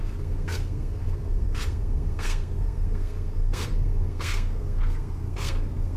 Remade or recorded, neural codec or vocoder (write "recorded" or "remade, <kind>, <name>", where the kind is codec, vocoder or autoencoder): remade, codec, SNAC